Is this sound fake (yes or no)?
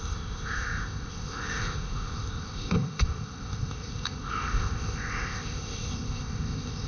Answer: yes